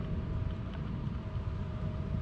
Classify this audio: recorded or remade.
remade